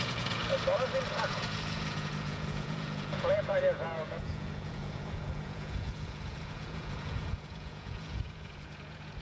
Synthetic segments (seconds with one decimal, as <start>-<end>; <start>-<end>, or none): 0.0-0.4; 1.1-9.2